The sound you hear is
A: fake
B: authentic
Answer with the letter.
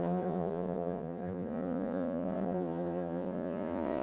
A